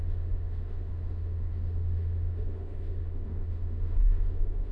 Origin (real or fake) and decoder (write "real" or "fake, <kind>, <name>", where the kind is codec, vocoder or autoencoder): fake, autoencoder, DAC-VAE